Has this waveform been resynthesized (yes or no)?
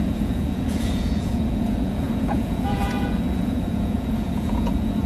yes